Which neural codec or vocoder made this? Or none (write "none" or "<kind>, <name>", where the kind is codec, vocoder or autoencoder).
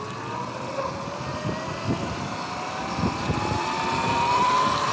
none